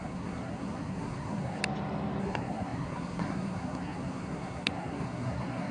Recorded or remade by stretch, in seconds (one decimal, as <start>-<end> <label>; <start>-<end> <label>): 0.0-1.6 remade; 1.6-2.2 recorded; 2.2-5.7 remade